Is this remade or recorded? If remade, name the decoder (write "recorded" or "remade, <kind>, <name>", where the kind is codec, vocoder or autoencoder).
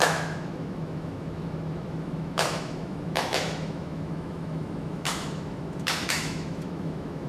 remade, autoencoder, DAC-VAE